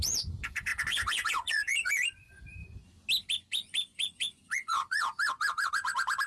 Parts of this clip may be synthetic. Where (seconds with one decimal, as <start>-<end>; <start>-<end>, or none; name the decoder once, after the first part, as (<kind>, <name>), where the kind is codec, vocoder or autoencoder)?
0.0-2.6 (vocoder, Vocos); 3.3-6.3